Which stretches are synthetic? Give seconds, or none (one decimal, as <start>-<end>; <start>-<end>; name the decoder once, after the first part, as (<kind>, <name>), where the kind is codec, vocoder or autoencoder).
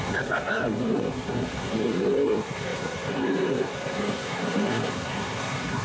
0.0-5.8 (codec, SNAC)